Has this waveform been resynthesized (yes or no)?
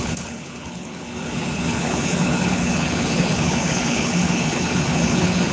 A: yes